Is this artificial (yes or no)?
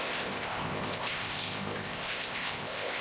yes